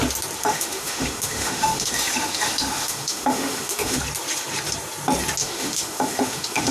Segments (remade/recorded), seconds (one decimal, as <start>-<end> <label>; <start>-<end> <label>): 0.0-0.4 recorded; 0.4-4.0 remade; 4.0-5.4 recorded; 5.4-6.7 remade

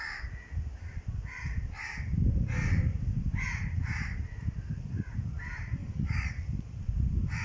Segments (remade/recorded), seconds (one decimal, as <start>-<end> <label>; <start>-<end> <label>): 0.0-5.8 recorded; 5.8-6.3 remade; 6.3-7.4 recorded

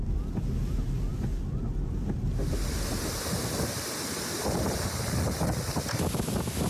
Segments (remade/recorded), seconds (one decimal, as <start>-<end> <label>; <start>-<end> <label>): 0.0-6.7 recorded

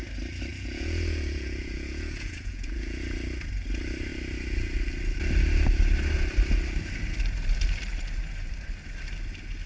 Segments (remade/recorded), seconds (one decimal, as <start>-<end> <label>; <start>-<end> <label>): 0.0-0.5 recorded; 0.5-3.0 remade; 3.0-9.7 recorded

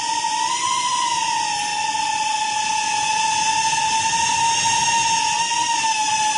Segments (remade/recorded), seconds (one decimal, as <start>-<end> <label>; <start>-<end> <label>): 0.0-1.7 remade; 1.7-3.8 recorded; 3.8-4.8 remade; 4.8-5.6 recorded; 5.6-6.4 remade

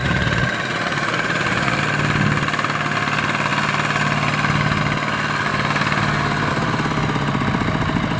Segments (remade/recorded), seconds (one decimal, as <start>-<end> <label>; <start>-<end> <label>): 0.0-1.8 remade; 1.8-8.2 recorded

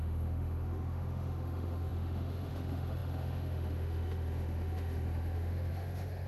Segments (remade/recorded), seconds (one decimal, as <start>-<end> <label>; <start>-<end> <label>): 0.0-6.3 remade